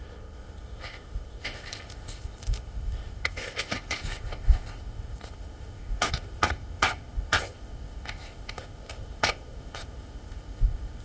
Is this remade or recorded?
remade